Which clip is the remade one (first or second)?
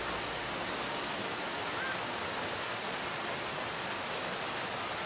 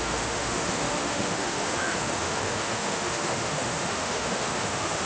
second